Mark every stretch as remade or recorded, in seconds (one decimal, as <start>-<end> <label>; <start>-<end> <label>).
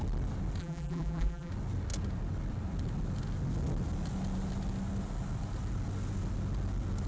0.0-0.6 recorded; 0.6-1.5 remade; 1.5-7.1 recorded